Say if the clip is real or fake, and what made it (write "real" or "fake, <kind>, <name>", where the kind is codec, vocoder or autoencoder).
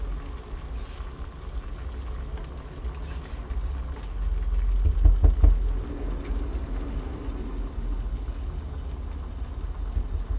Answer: real